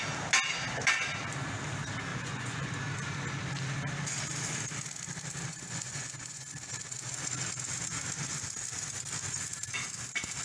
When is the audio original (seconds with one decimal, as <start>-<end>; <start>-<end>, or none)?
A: 0.0-2.1; 2.7-5.5; 6.5-10.4